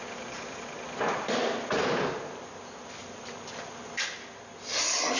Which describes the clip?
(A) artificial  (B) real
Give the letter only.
B